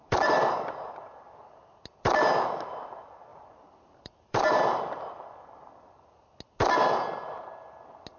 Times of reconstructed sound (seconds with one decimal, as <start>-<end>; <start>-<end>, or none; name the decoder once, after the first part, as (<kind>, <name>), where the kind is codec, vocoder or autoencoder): 0.0-0.9 (vocoder, BigVGAN v2); 3.3-5.1